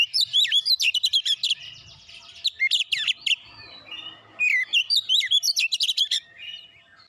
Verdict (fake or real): fake